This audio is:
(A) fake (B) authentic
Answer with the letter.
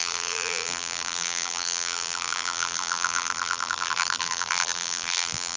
A